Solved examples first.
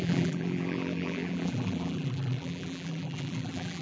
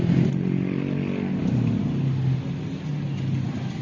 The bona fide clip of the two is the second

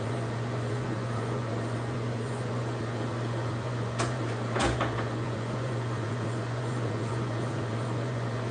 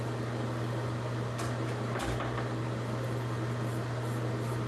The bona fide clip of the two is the second